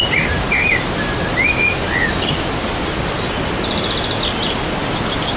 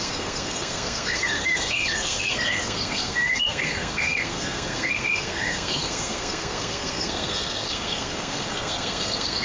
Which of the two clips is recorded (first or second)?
first